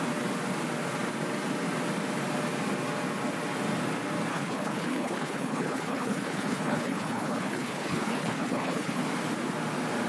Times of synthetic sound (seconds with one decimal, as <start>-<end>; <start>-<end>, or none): 4.3-9.0